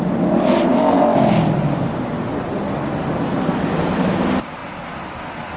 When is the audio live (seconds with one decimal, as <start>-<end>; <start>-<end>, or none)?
0.0-5.6